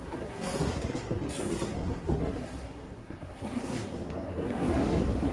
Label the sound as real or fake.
fake